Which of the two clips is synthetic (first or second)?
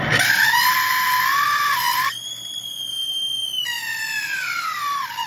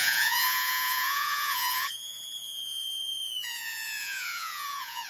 second